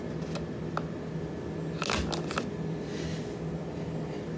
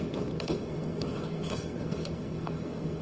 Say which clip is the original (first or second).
first